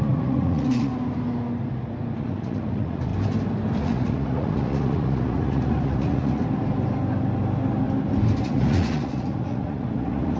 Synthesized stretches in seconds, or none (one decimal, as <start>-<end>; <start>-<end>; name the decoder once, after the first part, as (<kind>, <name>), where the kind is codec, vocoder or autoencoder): 0.0-0.9 (vocoder, Vocos); 2.2-3.1; 3.8-6.4; 8.4-10.4